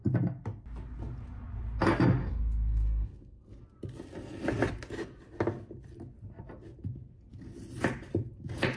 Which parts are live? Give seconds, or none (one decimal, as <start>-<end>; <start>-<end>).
0.0-2.2; 3.6-8.8